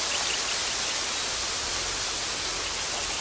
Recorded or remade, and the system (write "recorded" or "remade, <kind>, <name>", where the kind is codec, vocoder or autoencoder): recorded